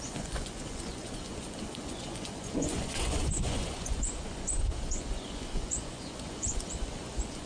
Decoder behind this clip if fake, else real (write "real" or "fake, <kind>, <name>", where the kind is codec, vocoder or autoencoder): fake, vocoder, Vocos